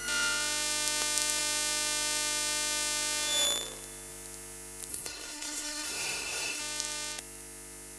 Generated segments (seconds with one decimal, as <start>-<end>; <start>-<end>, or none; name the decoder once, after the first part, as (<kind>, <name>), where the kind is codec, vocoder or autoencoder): 4.9-6.6 (codec, SNAC)